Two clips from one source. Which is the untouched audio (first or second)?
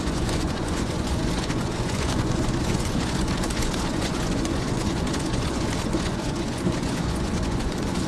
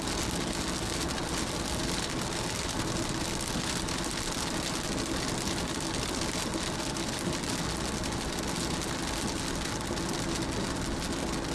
second